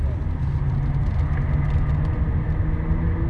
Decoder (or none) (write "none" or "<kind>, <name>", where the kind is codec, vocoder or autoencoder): none